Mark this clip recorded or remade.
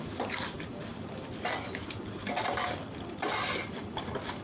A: recorded